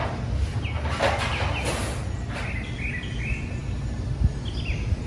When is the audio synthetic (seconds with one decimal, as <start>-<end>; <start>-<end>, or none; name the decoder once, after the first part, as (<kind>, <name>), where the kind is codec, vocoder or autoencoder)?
none